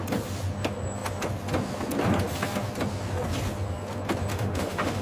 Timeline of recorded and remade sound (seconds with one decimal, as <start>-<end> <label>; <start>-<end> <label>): 0.0-4.3 recorded; 4.3-5.0 remade